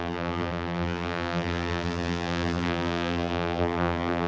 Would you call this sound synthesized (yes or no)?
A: yes